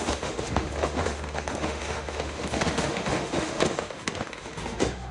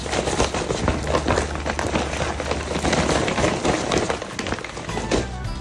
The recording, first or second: second